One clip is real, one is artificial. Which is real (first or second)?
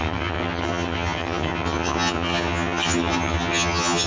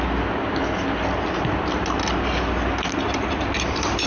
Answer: second